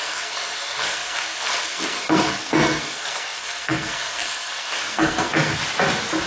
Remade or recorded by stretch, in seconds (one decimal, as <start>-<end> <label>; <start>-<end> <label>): 0.0-5.6 remade; 5.6-6.3 recorded